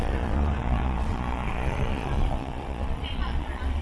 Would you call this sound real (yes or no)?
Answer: no